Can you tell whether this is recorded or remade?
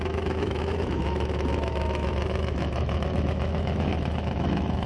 remade